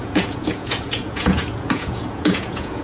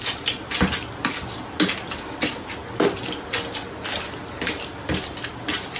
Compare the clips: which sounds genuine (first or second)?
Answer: second